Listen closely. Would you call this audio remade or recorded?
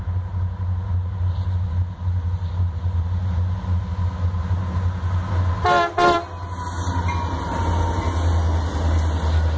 recorded